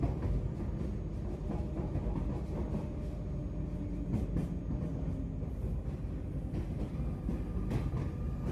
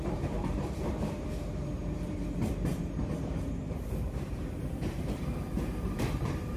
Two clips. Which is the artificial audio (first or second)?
second